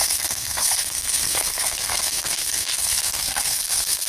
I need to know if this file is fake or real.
fake